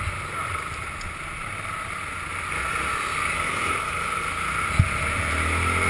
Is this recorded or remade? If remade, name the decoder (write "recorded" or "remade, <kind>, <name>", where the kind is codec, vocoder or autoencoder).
recorded